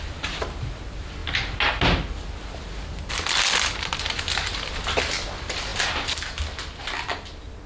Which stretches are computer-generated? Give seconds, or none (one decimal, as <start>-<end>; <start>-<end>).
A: none